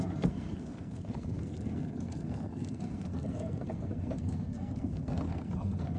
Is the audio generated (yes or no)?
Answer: yes